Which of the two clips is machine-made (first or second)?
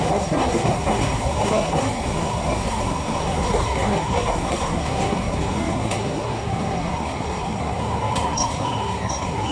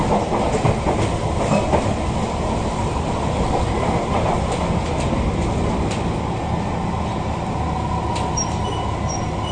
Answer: first